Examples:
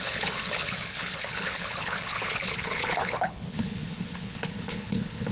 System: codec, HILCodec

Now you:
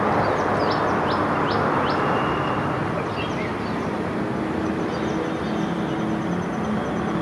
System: none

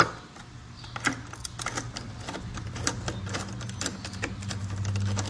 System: none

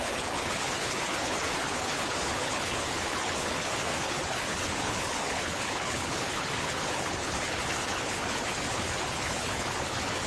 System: codec, HILCodec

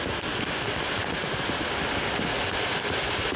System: none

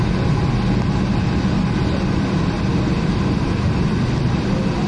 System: none